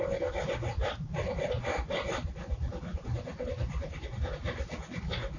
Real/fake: real